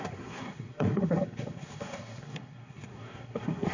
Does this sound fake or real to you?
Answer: fake